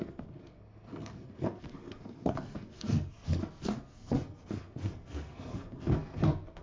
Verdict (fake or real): fake